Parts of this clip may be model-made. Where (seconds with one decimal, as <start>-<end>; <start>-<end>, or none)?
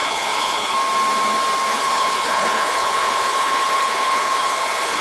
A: 0.0-0.7; 1.7-5.0